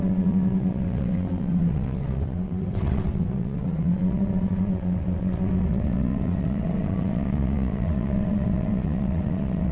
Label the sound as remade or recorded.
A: remade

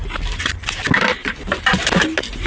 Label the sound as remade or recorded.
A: recorded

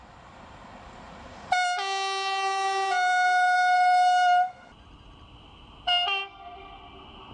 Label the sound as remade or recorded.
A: recorded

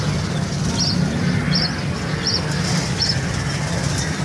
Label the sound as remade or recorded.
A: recorded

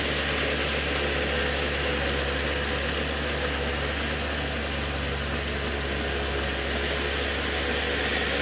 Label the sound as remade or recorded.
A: recorded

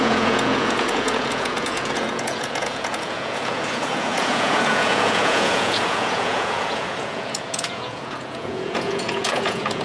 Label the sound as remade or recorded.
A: remade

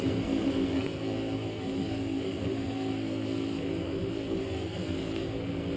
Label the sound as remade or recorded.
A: remade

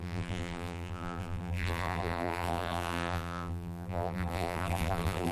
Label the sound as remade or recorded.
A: remade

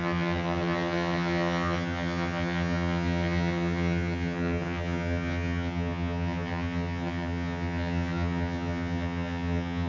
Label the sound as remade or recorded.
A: remade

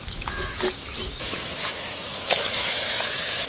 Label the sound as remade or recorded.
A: remade